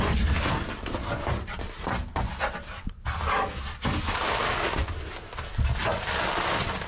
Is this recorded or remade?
recorded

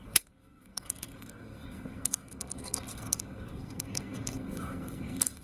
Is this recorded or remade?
remade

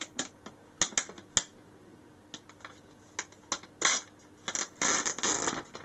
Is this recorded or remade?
recorded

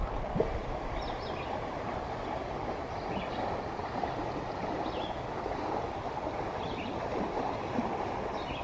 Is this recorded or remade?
recorded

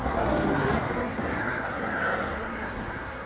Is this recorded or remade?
remade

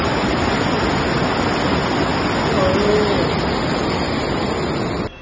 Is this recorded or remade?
recorded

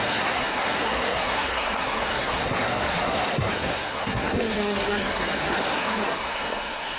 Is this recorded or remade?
remade